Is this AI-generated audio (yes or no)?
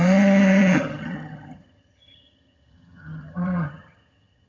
yes